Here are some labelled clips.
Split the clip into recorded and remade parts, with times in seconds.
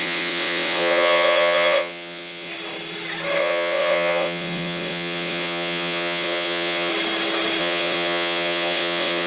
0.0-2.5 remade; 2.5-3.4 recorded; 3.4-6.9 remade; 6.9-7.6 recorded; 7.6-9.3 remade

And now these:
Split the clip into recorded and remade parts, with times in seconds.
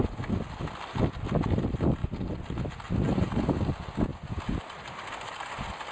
0.0-5.9 recorded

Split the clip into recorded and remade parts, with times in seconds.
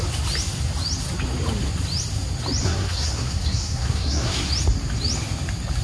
0.0-2.6 recorded; 2.6-4.5 remade; 4.5-5.8 recorded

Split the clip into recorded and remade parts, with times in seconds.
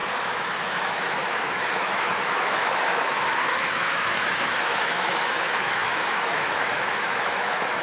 0.0-7.8 remade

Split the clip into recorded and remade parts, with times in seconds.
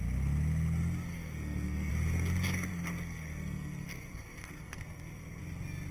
0.0-1.1 recorded; 1.1-1.9 remade; 1.9-2.7 recorded; 2.7-5.4 remade; 5.4-5.9 recorded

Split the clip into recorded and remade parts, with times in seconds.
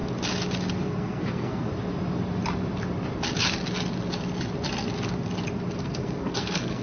0.0-0.7 recorded; 0.7-1.7 remade; 1.7-5.8 recorded; 5.8-6.8 remade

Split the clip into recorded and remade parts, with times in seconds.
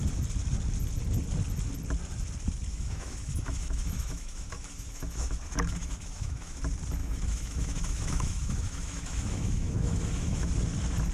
0.0-2.7 recorded; 2.7-6.6 remade; 6.6-7.0 recorded; 7.0-10.5 remade; 10.5-11.1 recorded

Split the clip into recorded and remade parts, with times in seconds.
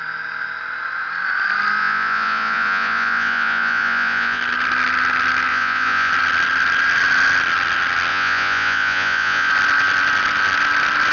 0.0-1.8 recorded; 1.8-4.4 remade; 4.4-5.5 recorded; 5.5-6.1 remade; 6.1-8.1 recorded; 8.1-9.5 remade; 9.5-11.1 recorded